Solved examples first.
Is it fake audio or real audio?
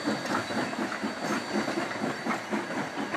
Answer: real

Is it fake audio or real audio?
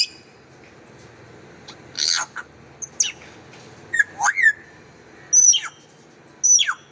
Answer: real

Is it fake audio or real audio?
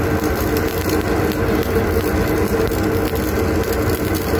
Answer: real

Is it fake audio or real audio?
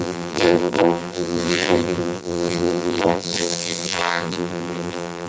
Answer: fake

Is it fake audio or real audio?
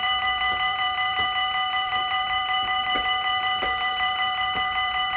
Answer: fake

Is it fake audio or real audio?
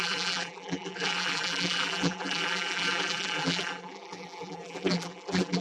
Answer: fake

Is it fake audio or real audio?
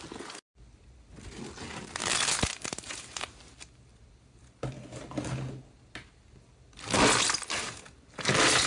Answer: real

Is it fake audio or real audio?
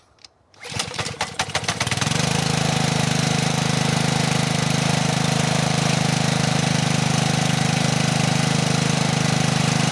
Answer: fake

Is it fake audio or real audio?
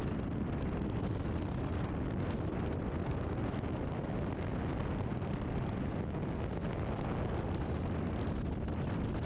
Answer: real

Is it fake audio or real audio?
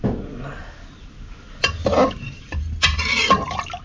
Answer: real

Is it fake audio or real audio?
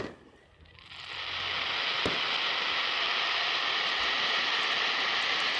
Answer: real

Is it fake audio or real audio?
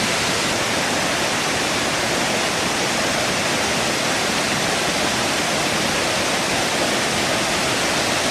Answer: real